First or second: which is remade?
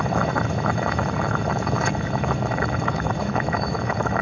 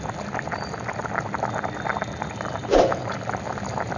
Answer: first